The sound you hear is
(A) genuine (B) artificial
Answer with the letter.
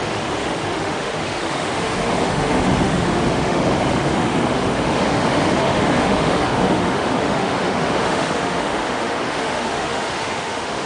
B